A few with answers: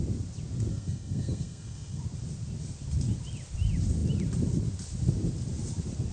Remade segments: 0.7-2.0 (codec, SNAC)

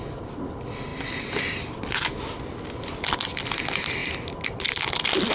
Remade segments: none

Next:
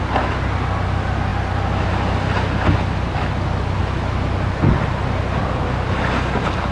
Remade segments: none

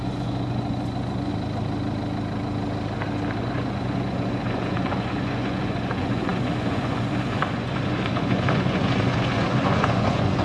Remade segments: 0.0-1.3 (vocoder, Vocos); 3.4-10.4

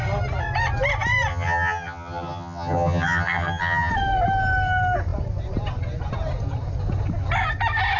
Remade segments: 1.3-3.9 (vocoder, HiFi-GAN)